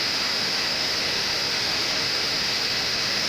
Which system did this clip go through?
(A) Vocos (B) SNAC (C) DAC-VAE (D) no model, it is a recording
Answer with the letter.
C